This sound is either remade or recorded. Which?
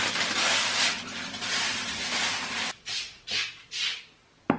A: recorded